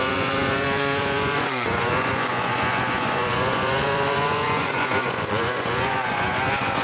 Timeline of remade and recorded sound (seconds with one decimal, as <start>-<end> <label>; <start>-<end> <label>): 0.0-6.8 remade